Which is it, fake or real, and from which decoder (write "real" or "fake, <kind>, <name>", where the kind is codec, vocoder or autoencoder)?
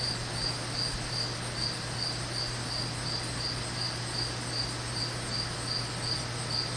real